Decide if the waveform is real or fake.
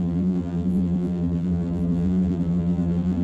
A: fake